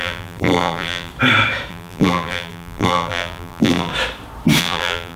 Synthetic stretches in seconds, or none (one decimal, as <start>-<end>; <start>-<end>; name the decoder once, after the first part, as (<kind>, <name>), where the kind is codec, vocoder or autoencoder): 0.0-1.1 (vocoder, BigVGAN v2); 1.7-3.9; 4.6-5.2